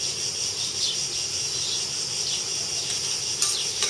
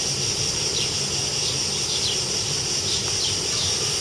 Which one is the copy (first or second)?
second